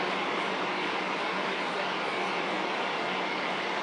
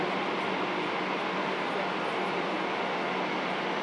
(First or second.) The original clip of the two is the second